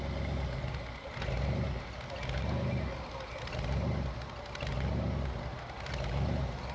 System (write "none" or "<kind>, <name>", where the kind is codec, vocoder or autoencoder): none